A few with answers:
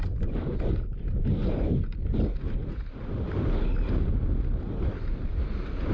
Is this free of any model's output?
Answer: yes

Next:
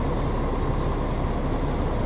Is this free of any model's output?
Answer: yes